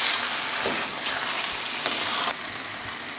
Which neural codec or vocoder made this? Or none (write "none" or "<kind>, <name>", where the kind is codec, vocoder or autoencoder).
none